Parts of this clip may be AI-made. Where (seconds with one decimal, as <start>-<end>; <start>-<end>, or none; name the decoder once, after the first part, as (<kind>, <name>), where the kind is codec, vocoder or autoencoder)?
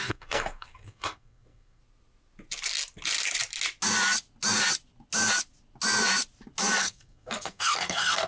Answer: 0.0-1.8 (codec, SNAC); 6.8-8.3